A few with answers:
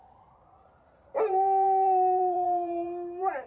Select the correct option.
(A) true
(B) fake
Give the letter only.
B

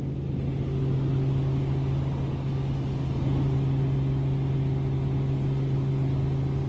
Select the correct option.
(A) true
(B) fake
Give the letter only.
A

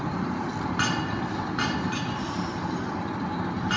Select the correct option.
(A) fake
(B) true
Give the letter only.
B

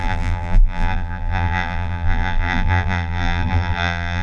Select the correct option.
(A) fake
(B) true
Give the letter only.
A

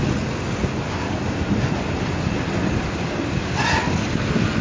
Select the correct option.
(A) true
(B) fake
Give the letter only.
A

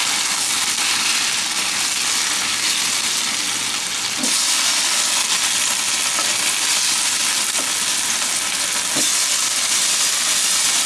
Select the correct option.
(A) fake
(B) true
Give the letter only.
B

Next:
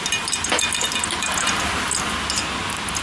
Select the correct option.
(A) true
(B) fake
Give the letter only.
A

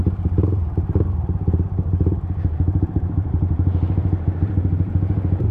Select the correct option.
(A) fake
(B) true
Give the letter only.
A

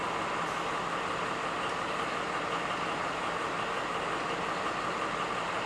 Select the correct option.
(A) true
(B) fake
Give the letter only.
A